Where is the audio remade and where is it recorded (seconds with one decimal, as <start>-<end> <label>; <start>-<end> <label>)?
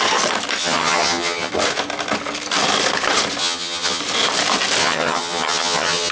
0.0-0.6 recorded; 0.6-1.5 remade; 1.5-3.4 recorded; 3.4-4.0 remade; 4.0-4.8 recorded; 4.8-6.1 remade